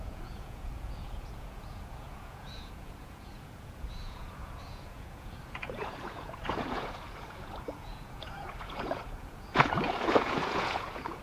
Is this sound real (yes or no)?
no